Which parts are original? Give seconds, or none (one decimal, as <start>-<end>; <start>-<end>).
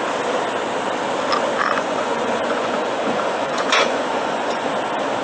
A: 0.0-1.6; 4.7-5.2